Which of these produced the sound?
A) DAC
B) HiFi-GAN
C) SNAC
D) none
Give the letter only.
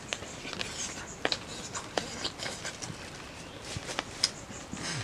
D